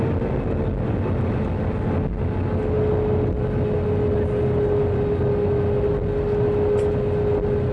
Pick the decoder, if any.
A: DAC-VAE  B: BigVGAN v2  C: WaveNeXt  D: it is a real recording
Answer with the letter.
D